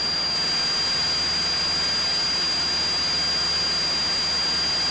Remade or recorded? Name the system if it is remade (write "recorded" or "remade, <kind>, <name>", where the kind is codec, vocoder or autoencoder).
recorded